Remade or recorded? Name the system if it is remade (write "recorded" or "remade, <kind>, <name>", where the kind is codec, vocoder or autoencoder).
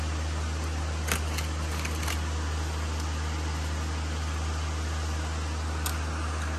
recorded